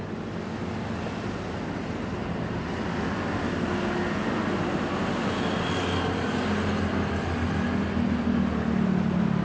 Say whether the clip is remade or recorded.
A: recorded